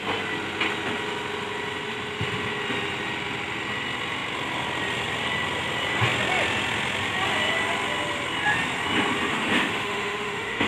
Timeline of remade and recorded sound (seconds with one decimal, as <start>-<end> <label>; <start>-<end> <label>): 0.0-9.3 recorded; 9.3-10.7 remade